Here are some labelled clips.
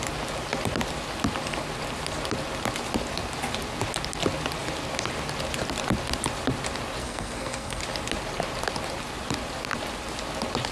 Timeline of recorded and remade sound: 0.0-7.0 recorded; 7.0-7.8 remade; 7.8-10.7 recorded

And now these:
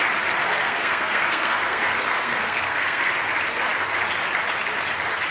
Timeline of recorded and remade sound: 0.0-0.4 recorded; 0.4-3.1 remade; 3.1-5.3 recorded

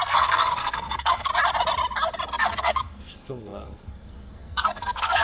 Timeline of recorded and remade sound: 0.0-1.3 remade; 1.3-2.4 recorded; 2.4-5.2 remade

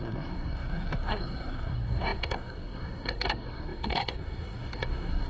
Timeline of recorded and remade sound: 0.0-5.3 remade

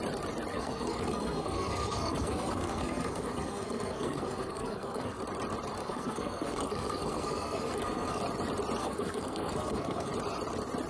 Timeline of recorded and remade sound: 0.0-0.5 recorded; 0.5-5.2 remade; 5.2-5.8 recorded; 5.8-8.2 remade; 8.2-8.8 recorded; 8.8-10.1 remade; 10.1-10.9 recorded

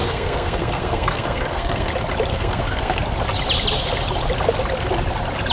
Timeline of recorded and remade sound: 0.0-1.9 remade; 1.9-2.3 recorded; 2.3-3.0 remade; 3.0-5.5 recorded

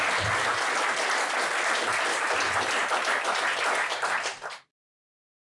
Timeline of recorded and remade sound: 0.0-5.4 recorded

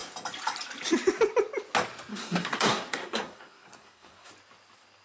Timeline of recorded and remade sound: 0.0-2.1 recorded; 2.1-4.3 remade; 4.3-5.0 recorded